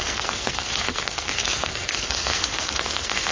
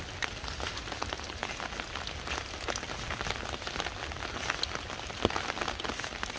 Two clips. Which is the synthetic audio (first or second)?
first